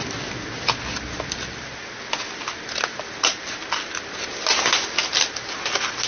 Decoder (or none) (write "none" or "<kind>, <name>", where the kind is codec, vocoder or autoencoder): none